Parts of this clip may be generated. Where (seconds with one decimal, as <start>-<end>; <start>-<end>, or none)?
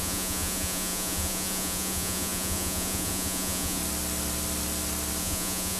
0.0-3.8; 5.2-5.8